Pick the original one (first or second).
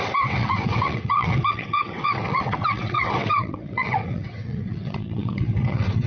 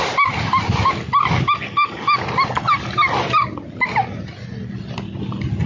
second